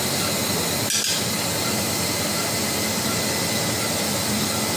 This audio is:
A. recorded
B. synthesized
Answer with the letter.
A